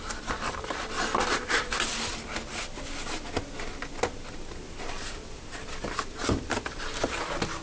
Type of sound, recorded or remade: recorded